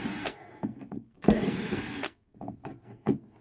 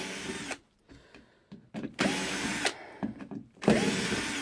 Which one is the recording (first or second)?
second